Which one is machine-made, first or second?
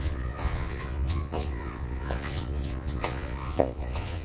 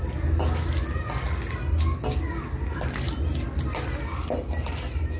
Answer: first